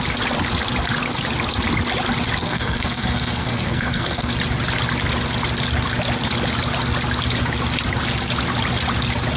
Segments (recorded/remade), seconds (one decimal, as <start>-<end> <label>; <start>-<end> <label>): 0.0-2.4 recorded; 2.4-4.3 remade; 4.3-9.4 recorded

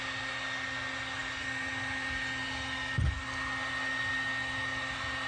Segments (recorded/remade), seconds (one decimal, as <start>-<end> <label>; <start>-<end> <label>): 0.0-5.3 recorded

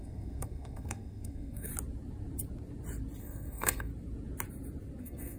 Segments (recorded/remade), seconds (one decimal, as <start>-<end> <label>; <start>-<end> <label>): 0.0-1.7 remade; 1.7-3.2 recorded; 3.2-3.9 remade; 3.9-5.0 recorded; 5.0-5.4 remade

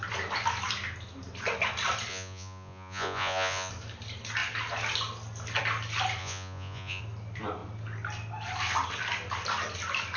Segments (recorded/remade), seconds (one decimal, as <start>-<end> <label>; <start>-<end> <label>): 0.0-2.1 recorded; 2.1-3.7 remade; 3.7-6.2 recorded; 6.2-7.0 remade; 7.0-10.2 recorded

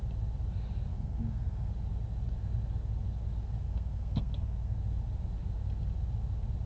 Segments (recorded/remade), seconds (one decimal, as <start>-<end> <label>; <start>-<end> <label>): 0.0-0.9 recorded; 0.9-1.7 remade; 1.7-3.4 recorded; 3.4-4.8 remade; 4.8-6.7 recorded